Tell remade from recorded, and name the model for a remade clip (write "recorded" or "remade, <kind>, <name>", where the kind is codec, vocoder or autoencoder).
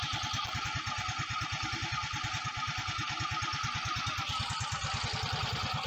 recorded